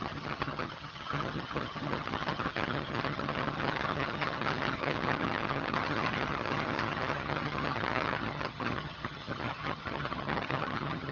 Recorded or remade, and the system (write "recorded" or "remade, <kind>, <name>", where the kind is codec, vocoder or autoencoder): remade, vocoder, HiFi-GAN